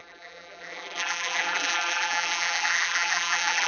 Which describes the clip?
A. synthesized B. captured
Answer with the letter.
A